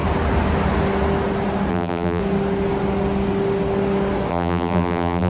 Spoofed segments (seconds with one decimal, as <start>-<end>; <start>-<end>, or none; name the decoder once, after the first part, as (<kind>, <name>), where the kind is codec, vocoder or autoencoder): 1.7-2.2 (vocoder, BigVGAN v2); 4.3-5.3